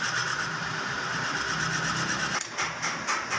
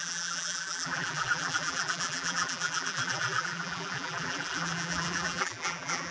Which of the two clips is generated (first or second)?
second